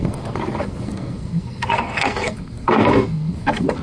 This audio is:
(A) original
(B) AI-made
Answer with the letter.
B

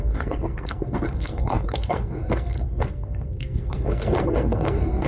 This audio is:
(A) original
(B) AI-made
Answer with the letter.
B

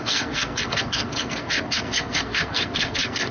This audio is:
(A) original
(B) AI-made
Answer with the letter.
B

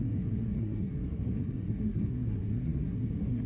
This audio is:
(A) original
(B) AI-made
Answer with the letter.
B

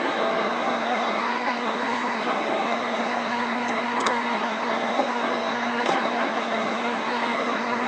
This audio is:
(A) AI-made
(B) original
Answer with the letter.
A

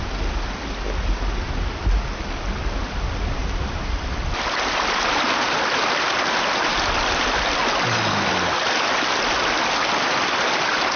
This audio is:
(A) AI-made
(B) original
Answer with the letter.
B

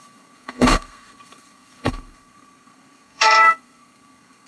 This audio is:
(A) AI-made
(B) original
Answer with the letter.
A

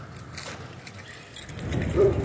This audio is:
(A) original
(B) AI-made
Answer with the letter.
A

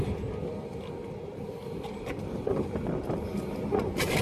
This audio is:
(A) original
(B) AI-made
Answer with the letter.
A